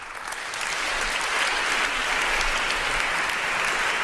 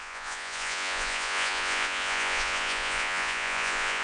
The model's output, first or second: second